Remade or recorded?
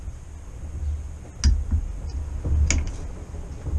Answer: recorded